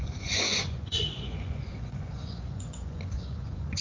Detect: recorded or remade remade